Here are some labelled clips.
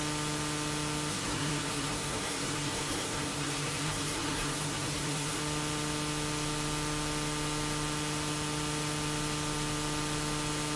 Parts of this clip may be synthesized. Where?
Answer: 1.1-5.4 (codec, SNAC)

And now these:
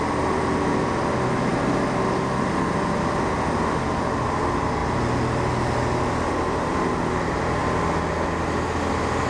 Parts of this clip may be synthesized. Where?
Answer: none

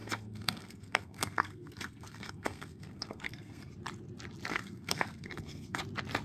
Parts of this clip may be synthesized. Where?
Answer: 0.0-3.7 (codec, SNAC); 4.5-5.8

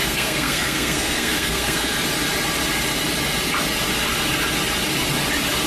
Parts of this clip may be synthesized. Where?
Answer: 0.0-1.9 (codec, SNAC)

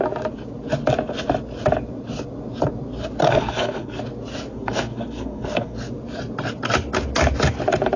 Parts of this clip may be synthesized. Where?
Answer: 3.2-4.0 (codec, SNAC); 4.5-5.8

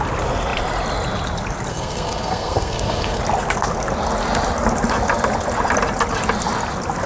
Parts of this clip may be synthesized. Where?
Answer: 1.7-3.2 (codec, SNAC)

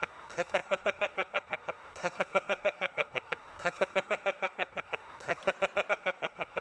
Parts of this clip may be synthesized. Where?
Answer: 0.0-5.4 (codec, SNAC); 5.9-6.6

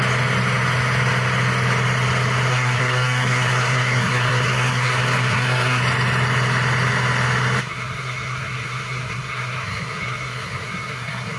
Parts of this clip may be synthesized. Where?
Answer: 2.5-5.8 (codec, SNAC); 7.6-11.4